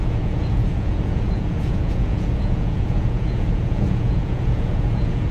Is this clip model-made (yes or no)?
yes